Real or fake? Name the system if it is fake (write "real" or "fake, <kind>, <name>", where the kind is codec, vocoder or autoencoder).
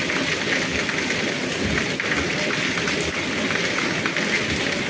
real